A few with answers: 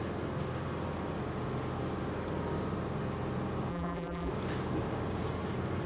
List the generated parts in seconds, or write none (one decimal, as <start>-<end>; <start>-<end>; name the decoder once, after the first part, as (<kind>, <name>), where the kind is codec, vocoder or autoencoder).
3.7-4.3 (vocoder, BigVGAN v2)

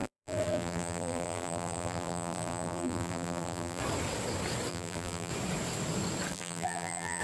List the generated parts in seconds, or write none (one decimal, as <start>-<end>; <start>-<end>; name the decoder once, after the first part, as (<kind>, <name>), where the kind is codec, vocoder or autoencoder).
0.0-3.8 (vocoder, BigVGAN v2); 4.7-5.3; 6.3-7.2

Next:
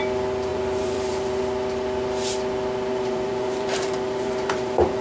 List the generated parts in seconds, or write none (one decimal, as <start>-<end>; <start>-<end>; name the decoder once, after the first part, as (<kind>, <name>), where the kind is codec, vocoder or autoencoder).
0.5-1.4 (vocoder, BigVGAN v2); 2.9-5.0

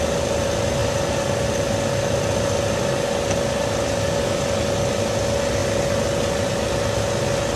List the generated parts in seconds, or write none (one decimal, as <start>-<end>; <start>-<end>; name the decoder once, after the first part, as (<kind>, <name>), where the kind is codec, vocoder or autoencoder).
none

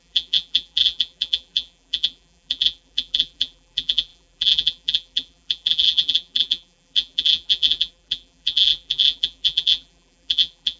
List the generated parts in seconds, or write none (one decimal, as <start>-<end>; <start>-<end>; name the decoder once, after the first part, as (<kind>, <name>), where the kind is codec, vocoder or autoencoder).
0.0-10.8 (vocoder, BigVGAN v2)

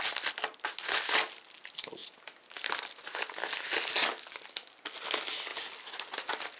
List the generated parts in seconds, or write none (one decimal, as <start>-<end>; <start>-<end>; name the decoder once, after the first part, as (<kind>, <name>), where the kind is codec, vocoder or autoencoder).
none

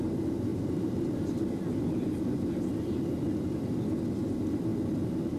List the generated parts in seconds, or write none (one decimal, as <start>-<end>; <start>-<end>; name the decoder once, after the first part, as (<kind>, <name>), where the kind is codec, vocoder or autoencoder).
0.5-3.7 (vocoder, BigVGAN v2)